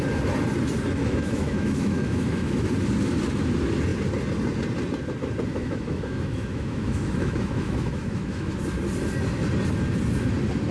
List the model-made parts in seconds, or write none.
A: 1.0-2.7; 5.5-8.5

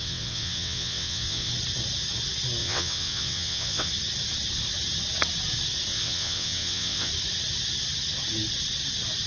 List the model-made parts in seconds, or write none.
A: 0.0-1.5; 2.6-3.9; 5.9-7.1

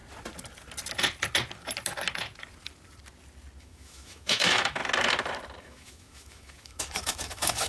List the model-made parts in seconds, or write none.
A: 3.6-4.8; 5.6-7.7